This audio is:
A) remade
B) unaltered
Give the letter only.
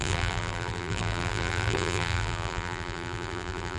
A